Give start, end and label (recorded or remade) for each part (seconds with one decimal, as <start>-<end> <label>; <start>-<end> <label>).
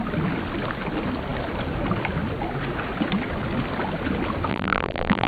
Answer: 0.0-4.5 recorded; 4.5-5.3 remade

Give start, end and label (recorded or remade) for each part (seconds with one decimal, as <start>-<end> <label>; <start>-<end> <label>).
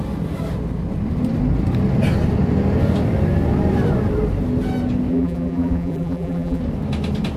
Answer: 0.0-5.1 recorded; 5.1-6.6 remade; 6.6-7.4 recorded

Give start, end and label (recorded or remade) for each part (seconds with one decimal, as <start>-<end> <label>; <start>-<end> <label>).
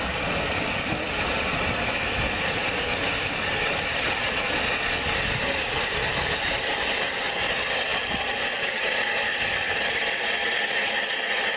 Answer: 0.0-11.6 recorded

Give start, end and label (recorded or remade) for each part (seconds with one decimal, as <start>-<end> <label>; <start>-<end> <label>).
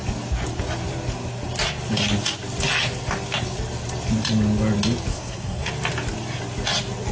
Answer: 0.0-5.1 recorded; 5.1-5.7 remade; 5.7-7.1 recorded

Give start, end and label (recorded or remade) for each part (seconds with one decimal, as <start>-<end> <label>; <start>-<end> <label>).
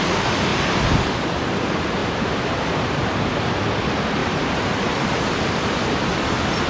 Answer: 0.0-0.5 recorded; 0.5-1.1 remade; 1.1-2.0 recorded; 2.0-3.5 remade; 3.5-4.2 recorded; 4.2-5.9 remade; 5.9-6.7 recorded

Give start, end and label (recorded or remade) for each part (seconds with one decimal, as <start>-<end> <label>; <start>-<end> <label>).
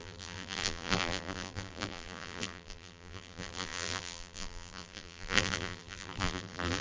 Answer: 0.0-6.8 remade